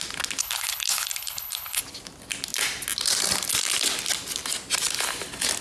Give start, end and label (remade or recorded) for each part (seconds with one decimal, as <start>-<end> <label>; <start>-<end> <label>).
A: 0.0-0.4 recorded; 0.4-1.8 remade; 1.8-5.6 recorded